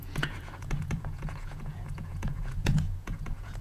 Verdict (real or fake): fake